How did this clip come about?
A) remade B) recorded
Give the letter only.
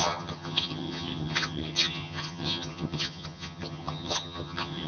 A